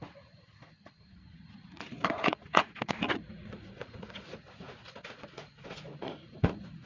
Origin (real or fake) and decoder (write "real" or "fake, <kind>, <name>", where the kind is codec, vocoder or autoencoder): fake, vocoder, Vocos